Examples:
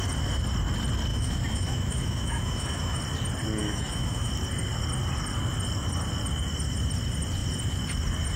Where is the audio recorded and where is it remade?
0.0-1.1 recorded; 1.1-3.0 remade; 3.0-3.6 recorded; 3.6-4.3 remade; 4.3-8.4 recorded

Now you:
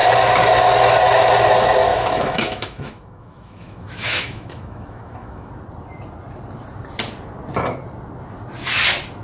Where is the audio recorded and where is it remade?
0.0-1.9 recorded; 1.9-5.5 remade; 5.5-9.2 recorded